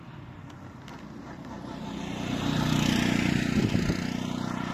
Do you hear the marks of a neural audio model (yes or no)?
no